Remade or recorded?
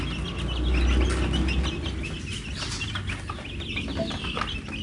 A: recorded